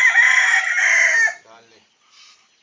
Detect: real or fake real